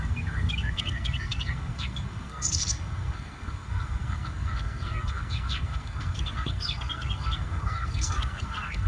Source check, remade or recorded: remade